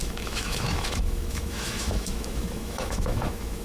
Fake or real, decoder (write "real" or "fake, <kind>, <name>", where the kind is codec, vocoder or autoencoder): fake, autoencoder, DAC-VAE